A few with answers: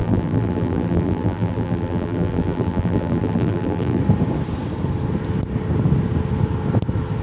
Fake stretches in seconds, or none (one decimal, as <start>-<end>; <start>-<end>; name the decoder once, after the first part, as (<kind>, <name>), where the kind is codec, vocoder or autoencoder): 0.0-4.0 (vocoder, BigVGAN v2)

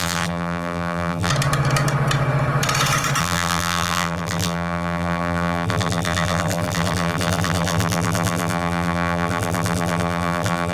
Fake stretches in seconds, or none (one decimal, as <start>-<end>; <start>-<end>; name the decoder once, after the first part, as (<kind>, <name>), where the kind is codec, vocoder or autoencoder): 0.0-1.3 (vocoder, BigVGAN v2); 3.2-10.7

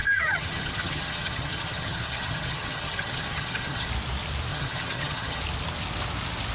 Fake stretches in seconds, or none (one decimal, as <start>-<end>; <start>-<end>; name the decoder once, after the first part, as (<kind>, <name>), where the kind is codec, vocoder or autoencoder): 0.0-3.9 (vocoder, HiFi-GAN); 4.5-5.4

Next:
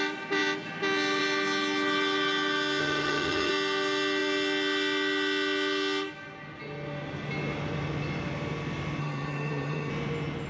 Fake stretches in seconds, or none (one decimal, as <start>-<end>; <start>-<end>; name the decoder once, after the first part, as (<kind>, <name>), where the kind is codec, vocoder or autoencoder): 2.8-3.5 (vocoder, HiFi-GAN); 9.0-9.9

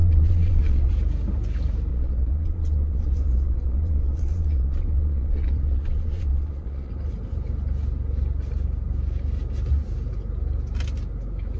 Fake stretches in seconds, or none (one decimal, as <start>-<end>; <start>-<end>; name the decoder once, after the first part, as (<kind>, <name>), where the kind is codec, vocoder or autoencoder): 0.0-0.9 (vocoder, Vocos); 1.9-6.9

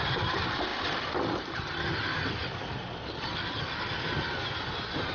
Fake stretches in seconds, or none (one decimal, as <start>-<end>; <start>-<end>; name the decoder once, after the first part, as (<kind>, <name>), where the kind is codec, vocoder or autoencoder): 0.7-1.6 (vocoder, BigVGAN v2); 2.4-4.1

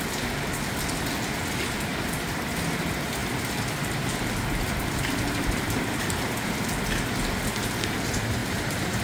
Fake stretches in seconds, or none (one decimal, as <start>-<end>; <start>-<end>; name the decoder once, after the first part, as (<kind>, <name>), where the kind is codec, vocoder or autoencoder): 1.9-2.4 (vocoder, BigVGAN v2); 3.2-6.5; 8.4-9.0

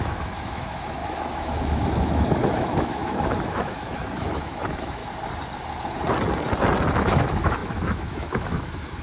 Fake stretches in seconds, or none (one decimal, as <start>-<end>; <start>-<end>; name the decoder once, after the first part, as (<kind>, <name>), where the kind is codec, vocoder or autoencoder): 0.0-5.0 (autoencoder, DAC-VAE); 6.9-9.0